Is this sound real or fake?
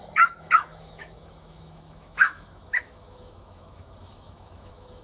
fake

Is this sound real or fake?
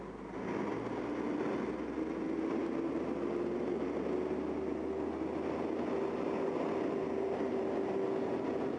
real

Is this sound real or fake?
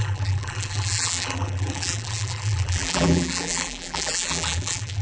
fake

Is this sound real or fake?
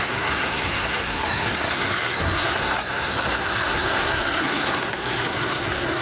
fake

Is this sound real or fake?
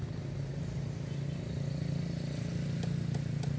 real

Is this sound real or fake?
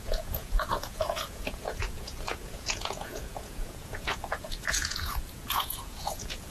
fake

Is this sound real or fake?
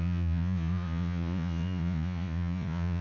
fake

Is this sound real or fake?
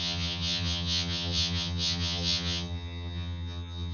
fake